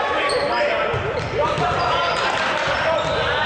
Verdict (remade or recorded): recorded